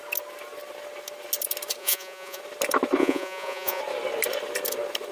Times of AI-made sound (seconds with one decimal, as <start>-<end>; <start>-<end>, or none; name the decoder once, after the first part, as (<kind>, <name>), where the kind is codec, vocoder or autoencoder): 1.8-2.4 (vocoder, Vocos); 3.0-3.8